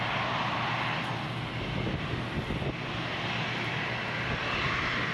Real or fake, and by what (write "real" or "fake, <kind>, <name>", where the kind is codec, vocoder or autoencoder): real